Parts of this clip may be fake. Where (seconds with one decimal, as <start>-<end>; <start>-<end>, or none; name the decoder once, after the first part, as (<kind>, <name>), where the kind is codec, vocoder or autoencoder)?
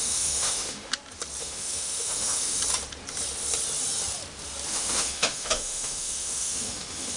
0.0-0.9 (autoencoder, DAC-VAE); 1.4-2.6; 4.7-7.2